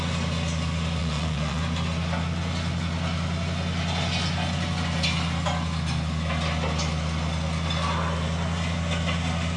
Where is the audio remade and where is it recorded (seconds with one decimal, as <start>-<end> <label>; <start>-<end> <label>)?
0.0-1.0 recorded; 1.0-1.6 remade; 1.6-9.6 recorded